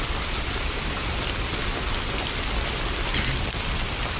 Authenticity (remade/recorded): recorded